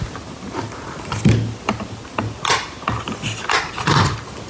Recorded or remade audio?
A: recorded